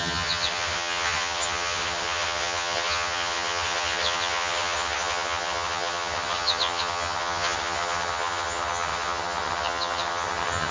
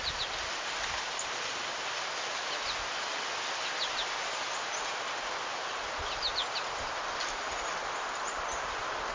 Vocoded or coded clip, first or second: first